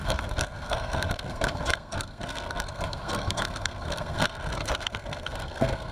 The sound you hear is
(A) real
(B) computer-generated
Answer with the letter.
B